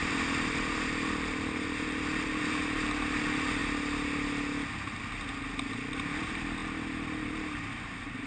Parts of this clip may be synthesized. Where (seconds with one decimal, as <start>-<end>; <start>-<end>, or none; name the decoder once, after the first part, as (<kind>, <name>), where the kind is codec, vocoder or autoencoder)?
0.0-3.6 (vocoder, BigVGAN v2); 5.7-8.3